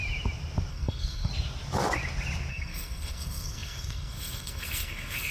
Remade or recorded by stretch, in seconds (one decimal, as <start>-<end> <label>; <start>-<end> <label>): 0.0-0.7 recorded; 0.7-1.3 remade; 1.3-2.5 recorded; 2.5-5.3 remade